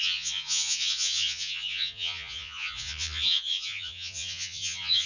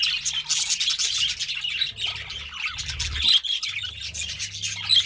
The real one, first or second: second